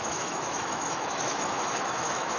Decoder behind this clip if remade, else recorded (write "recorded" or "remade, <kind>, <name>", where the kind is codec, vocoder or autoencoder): remade, autoencoder, DAC-VAE